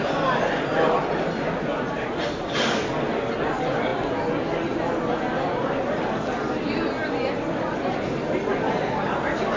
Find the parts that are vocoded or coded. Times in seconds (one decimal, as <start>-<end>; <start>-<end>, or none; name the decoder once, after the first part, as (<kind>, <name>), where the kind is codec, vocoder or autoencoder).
7.2-8.4 (vocoder, BigVGAN v2)